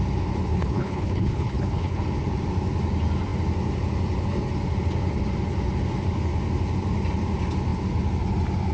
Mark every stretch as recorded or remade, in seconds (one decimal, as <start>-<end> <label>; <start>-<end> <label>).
0.0-0.5 recorded; 0.5-2.0 remade; 2.0-8.7 recorded